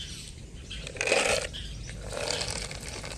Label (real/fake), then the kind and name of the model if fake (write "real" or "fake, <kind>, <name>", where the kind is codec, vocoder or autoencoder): real